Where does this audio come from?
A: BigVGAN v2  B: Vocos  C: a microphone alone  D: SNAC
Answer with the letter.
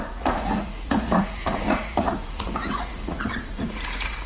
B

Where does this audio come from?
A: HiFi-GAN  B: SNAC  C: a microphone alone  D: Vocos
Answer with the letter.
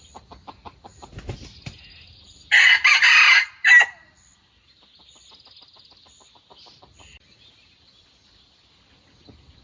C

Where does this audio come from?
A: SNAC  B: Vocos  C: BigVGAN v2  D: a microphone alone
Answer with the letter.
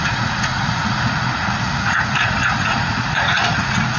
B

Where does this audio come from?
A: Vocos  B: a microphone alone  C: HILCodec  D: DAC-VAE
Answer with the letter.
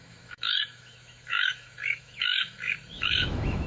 D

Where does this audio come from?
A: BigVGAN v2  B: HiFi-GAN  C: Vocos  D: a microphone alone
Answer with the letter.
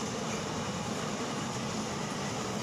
D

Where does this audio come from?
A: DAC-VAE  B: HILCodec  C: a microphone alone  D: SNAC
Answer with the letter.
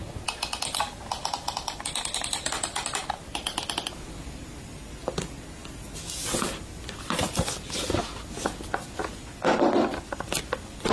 C